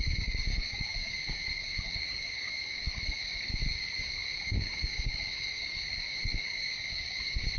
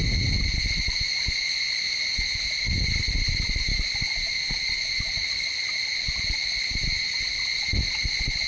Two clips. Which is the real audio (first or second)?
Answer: second